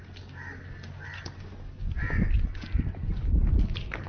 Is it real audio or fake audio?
real